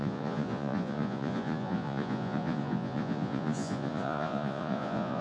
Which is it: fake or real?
fake